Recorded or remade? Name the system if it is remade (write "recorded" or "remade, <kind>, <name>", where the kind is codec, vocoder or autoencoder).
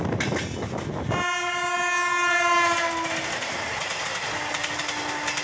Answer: recorded